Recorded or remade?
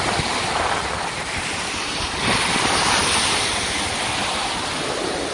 recorded